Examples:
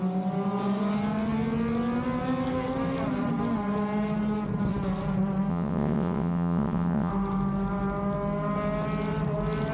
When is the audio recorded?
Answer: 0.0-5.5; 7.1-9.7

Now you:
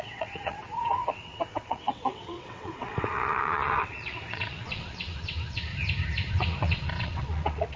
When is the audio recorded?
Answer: 5.7-6.3

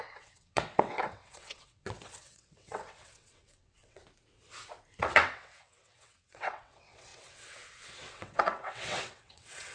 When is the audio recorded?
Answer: 4.0-5.0

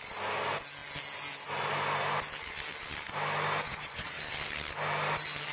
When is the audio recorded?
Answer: 0.0-3.6; 4.2-5.5

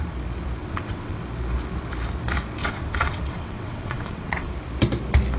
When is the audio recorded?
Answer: 0.0-0.6; 1.2-2.6; 4.5-5.4

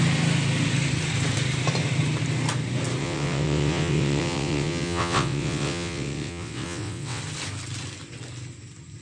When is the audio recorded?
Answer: 0.0-3.0; 7.2-9.0